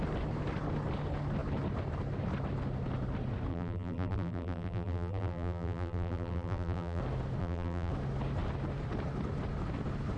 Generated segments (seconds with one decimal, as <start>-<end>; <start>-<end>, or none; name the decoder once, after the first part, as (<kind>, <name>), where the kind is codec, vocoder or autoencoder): 3.5-7.0 (vocoder, BigVGAN v2); 7.4-7.9